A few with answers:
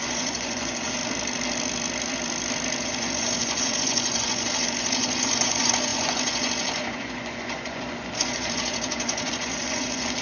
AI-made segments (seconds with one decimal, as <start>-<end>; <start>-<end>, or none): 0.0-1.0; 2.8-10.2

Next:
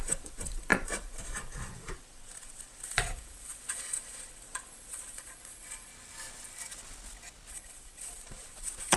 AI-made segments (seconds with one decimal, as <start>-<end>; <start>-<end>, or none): 0.0-5.9; 7.5-9.0

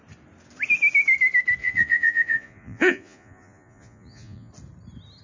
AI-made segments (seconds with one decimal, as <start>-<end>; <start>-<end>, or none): 1.6-4.5

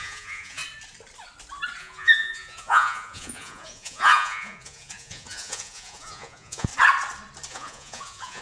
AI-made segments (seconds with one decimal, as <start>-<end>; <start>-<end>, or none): 0.0-0.6; 1.8-6.7; 7.5-8.4